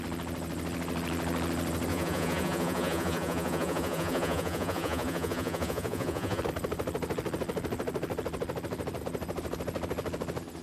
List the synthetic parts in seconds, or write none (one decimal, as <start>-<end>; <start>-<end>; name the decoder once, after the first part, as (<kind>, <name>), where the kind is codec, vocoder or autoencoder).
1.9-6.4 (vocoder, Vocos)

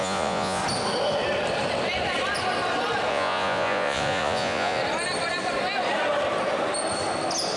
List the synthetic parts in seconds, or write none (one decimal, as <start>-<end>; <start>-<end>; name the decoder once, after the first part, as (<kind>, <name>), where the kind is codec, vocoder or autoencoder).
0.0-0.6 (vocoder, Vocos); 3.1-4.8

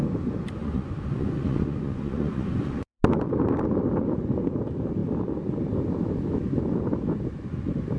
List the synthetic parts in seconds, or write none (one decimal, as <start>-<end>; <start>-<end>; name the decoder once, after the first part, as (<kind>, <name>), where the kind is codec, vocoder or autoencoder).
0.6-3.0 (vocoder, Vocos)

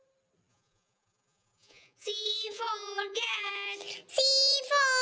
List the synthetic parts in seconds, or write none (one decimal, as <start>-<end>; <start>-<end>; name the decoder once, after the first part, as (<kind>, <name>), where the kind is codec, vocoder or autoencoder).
0.5-3.5 (vocoder, Vocos)

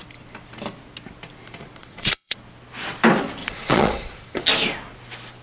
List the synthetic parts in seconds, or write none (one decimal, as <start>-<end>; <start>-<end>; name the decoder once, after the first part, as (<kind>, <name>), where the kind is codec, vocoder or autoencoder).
1.8-2.4 (vocoder, Vocos); 3.4-4.4

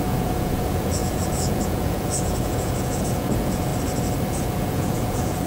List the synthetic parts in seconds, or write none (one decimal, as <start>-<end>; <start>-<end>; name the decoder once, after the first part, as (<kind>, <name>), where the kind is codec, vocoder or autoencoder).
0.0-3.7 (vocoder, Vocos); 4.3-5.5

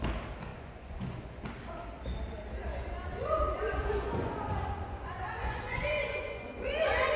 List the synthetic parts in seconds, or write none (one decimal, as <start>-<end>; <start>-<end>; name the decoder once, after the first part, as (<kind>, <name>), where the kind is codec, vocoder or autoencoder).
0.5-1.4 (vocoder, Vocos); 2.7-7.2